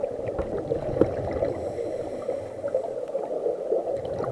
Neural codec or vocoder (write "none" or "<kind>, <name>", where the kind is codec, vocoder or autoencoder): none